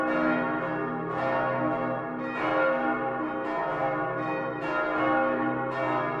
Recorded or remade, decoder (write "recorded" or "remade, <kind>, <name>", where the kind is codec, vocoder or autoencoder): recorded